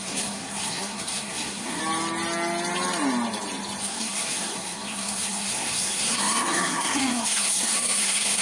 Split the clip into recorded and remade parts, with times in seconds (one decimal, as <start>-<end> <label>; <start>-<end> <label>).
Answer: 0.0-1.8 remade; 1.8-3.8 recorded; 3.8-8.4 remade